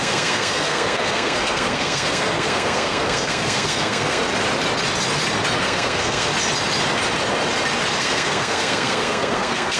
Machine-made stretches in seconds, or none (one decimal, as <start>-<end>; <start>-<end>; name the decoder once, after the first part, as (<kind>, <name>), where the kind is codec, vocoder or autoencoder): 0.0-4.2 (codec, SNAC); 5.6-6.3; 8.0-9.8